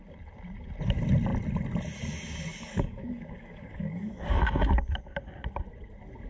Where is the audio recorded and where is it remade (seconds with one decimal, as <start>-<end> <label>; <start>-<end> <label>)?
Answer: 0.0-2.5 recorded; 2.5-4.4 remade; 4.4-6.3 recorded

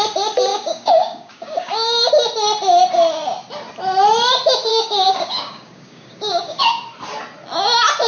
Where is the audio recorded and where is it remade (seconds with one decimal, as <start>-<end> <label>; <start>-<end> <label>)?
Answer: 0.0-0.5 recorded; 0.5-2.1 remade; 2.1-4.7 recorded; 4.7-6.6 remade; 6.6-8.1 recorded

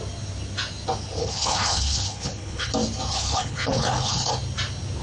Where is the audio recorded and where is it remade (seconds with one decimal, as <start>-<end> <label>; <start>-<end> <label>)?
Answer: 0.0-1.2 recorded; 1.2-2.7 remade; 2.7-3.1 recorded; 3.1-4.3 remade; 4.3-5.0 recorded

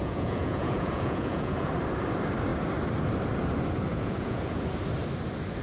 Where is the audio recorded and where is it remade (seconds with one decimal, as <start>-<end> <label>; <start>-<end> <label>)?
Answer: 0.0-1.7 remade; 1.7-3.9 recorded; 3.9-4.5 remade; 4.5-5.6 recorded

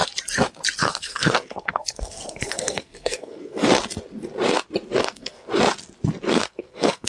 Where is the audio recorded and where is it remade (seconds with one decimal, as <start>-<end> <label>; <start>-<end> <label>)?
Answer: 0.0-0.8 recorded; 0.8-3.6 remade; 3.6-5.0 recorded; 5.0-5.5 remade; 5.5-6.3 recorded; 6.3-7.1 remade